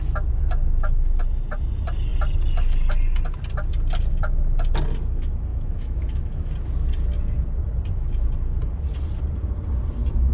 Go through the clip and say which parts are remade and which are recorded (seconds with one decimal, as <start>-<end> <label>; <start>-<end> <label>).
0.0-5.5 recorded; 5.5-6.5 remade; 6.5-10.3 recorded